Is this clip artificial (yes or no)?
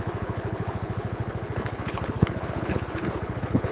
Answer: yes